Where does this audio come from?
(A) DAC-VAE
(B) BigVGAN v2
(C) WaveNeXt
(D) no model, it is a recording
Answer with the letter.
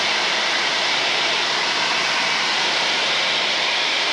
D